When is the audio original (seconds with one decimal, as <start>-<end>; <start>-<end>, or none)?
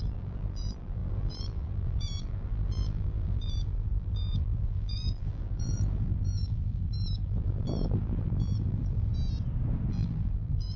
9.1-9.9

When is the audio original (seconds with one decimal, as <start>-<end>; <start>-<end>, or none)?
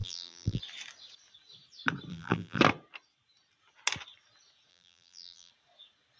0.6-2.1; 2.6-4.7; 5.5-6.2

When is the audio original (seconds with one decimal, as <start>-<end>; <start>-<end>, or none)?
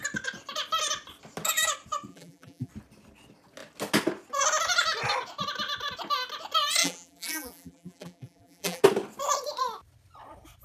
0.0-2.1; 2.7-6.8; 8.8-10.6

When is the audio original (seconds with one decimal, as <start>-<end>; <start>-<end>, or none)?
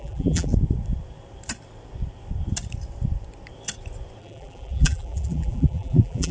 0.5-4.2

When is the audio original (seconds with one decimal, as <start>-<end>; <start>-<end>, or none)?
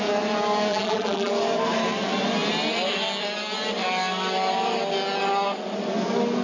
0.0-0.7; 1.3-6.4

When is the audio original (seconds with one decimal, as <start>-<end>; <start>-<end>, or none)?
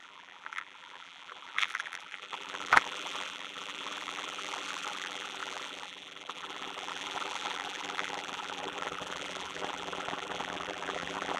none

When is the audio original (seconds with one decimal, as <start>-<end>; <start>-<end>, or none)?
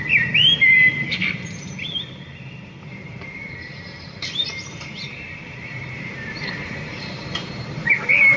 0.0-0.9; 2.4-2.9; 7.9-8.4